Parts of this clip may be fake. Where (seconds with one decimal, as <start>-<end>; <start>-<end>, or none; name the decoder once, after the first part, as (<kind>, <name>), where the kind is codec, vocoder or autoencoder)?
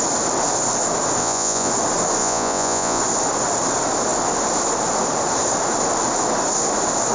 1.2-1.7 (vocoder, Vocos); 2.2-3.0